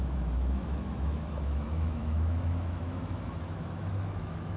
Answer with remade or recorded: remade